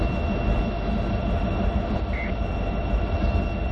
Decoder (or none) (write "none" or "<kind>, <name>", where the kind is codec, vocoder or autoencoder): none